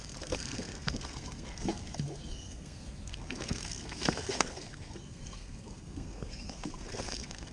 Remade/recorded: remade